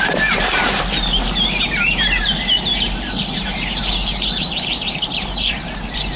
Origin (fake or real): fake